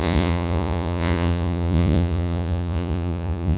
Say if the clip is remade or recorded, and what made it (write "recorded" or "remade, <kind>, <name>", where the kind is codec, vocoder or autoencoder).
remade, vocoder, Vocos